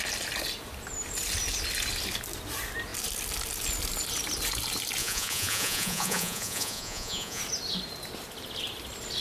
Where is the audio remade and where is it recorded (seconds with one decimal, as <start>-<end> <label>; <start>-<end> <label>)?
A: 0.0-5.0 recorded; 5.0-7.4 remade; 7.4-9.2 recorded